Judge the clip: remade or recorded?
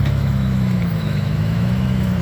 remade